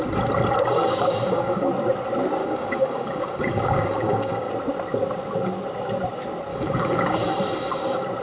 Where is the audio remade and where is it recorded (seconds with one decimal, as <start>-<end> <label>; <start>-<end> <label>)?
0.0-0.9 recorded; 0.9-1.7 remade; 1.7-2.4 recorded; 2.4-4.5 remade; 4.5-6.5 recorded; 6.5-7.3 remade; 7.3-8.2 recorded